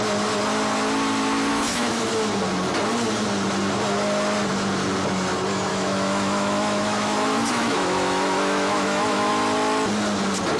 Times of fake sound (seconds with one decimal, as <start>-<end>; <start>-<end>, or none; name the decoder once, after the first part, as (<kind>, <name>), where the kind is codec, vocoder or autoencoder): 1.5-2.1 (autoencoder, DAC-VAE); 5.7-9.3